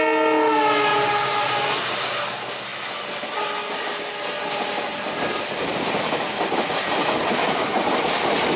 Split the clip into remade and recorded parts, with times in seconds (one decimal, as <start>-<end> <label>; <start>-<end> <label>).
0.0-0.9 recorded; 0.9-1.6 remade; 1.6-8.6 recorded